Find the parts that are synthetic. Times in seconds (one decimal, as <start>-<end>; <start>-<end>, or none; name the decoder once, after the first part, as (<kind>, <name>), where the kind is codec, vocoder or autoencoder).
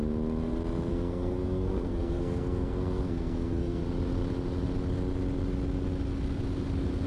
0.9-3.8 (codec, SNAC)